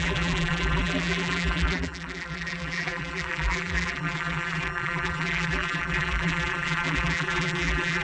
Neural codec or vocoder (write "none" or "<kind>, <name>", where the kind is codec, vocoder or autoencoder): vocoder, BigVGAN v2